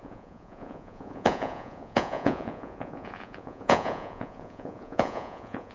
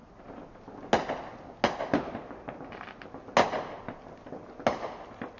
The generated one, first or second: first